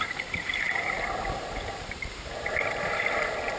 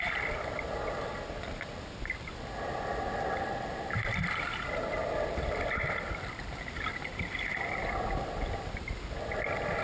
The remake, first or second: first